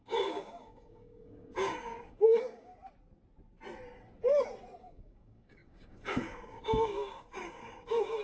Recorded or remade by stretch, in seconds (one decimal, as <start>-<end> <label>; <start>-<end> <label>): 0.0-2.7 remade; 2.7-4.8 recorded; 4.8-8.2 remade